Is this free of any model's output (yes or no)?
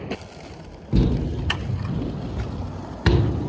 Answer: yes